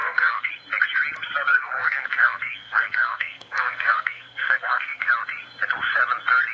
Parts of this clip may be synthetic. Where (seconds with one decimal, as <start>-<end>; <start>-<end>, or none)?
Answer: 0.0-0.5; 1.5-5.1